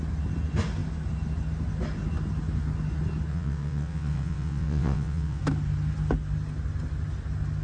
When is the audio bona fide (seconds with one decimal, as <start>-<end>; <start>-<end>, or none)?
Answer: 0.0-3.3; 5.4-7.6